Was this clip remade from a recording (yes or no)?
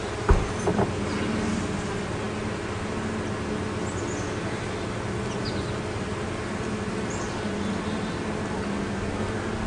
no